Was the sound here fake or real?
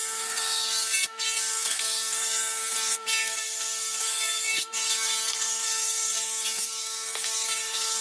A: fake